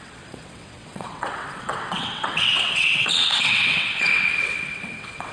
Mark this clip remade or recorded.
remade